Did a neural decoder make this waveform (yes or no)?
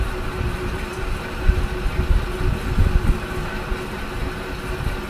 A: no